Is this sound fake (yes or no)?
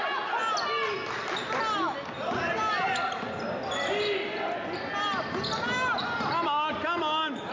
no